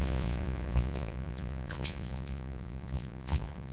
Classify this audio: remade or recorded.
remade